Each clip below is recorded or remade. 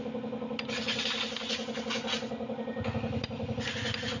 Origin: recorded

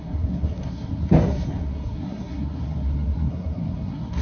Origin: remade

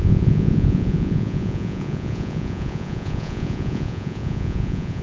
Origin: remade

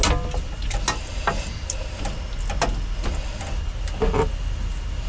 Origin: recorded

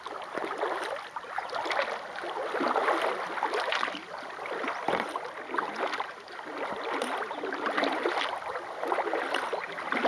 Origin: recorded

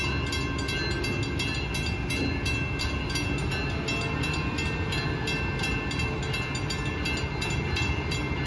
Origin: recorded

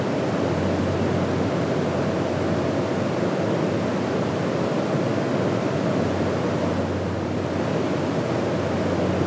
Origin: recorded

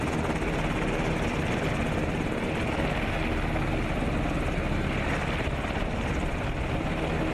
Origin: recorded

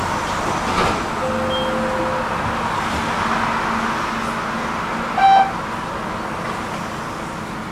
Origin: recorded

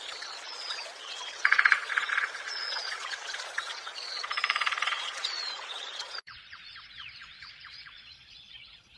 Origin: remade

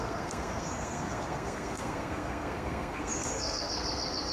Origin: remade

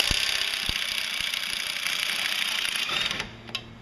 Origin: recorded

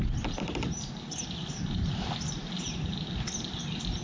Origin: recorded